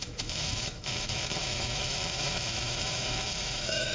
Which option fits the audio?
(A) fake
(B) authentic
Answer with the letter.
A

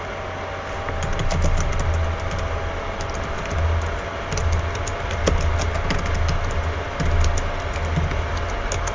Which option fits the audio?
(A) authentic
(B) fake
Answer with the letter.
A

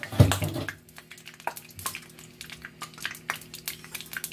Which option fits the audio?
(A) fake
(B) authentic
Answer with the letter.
B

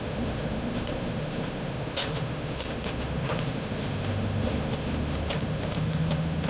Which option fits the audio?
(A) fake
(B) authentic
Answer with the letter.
A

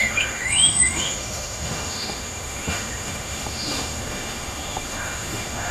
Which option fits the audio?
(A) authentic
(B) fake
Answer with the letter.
B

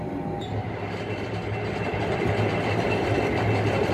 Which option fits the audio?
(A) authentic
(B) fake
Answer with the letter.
A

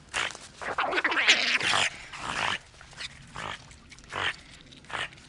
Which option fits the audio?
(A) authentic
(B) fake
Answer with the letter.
A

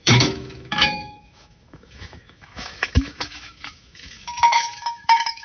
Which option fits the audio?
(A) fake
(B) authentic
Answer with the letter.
A